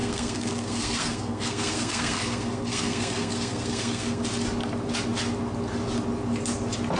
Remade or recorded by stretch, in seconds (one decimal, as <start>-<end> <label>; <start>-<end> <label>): 0.0-4.2 remade; 4.2-7.0 recorded